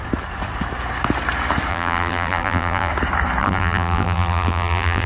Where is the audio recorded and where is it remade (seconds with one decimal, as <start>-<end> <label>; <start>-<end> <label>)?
0.0-1.7 recorded; 1.7-2.9 remade; 2.9-3.4 recorded; 3.4-5.1 remade